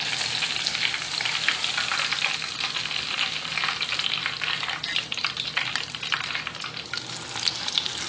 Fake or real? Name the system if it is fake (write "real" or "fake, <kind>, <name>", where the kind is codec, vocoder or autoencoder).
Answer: real